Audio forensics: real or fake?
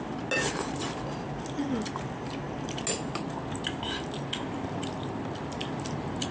real